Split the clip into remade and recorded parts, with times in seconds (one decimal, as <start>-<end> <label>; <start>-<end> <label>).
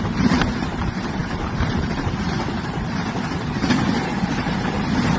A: 0.0-5.2 remade